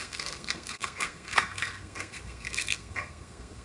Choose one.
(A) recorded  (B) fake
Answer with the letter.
B